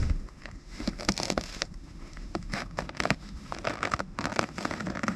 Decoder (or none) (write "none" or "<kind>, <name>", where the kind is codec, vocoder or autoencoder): autoencoder, DAC-VAE